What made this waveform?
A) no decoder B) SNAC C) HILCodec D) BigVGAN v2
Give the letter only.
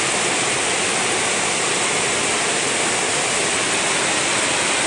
A